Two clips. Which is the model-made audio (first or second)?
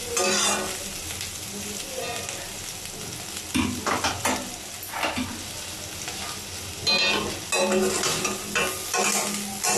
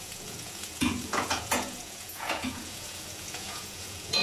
second